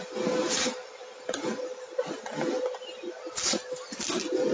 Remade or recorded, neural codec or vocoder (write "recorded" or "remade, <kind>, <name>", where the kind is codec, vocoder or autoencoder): recorded